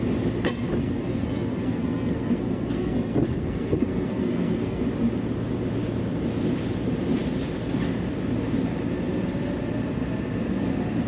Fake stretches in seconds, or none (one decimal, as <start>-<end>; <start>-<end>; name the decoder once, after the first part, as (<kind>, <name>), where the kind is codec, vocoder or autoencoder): 0.8-4.8 (codec, SNAC)